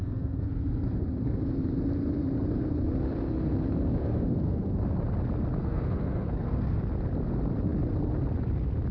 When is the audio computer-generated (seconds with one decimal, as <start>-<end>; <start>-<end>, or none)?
0.0-1.4; 4.0-4.8; 5.6-6.8

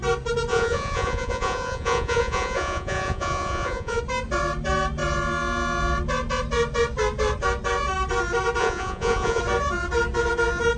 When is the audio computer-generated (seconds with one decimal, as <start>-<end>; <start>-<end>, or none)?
0.5-4.0; 8.6-9.4

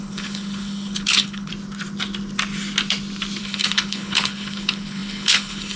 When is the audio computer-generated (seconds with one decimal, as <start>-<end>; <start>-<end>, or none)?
0.0-1.5; 3.4-5.8

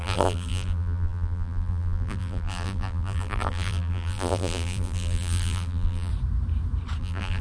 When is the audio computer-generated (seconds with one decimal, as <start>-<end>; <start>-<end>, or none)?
0.0-6.1; 7.0-7.4

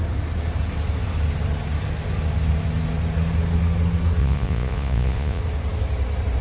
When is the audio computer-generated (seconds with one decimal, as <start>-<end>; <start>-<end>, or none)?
4.2-5.4

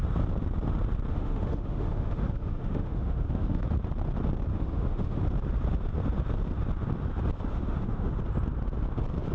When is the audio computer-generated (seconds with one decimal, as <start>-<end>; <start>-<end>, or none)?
1.1-3.6; 4.5-5.2; 7.5-8.2